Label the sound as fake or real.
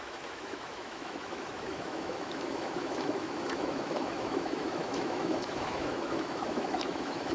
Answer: fake